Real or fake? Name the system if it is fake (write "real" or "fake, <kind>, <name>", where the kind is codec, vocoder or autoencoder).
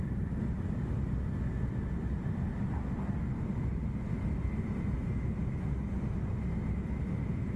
real